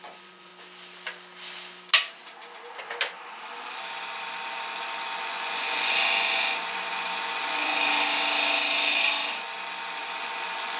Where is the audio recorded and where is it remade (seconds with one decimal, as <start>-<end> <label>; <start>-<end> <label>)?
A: 0.0-0.5 remade; 0.5-5.2 recorded; 5.2-7.7 remade; 7.7-10.2 recorded; 10.2-10.8 remade